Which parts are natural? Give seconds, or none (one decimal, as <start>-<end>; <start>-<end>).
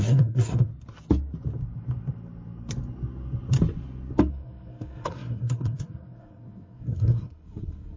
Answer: 0.7-4.3